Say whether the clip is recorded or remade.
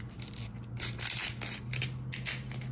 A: recorded